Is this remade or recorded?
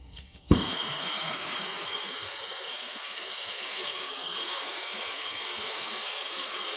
remade